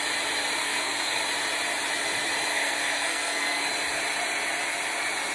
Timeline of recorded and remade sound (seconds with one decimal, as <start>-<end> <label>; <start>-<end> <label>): 0.0-0.6 recorded; 0.6-1.2 remade; 1.2-2.5 recorded; 2.5-3.7 remade; 3.7-5.3 recorded